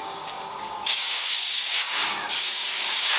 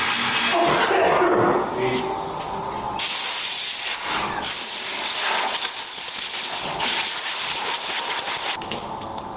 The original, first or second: second